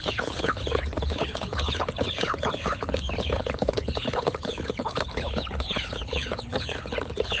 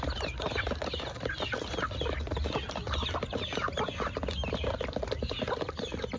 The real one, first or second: second